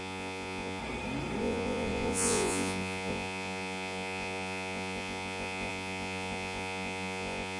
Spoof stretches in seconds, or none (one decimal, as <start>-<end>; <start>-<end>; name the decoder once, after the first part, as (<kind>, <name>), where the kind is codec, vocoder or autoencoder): 0.0-0.8 (vocoder, Vocos); 1.4-7.6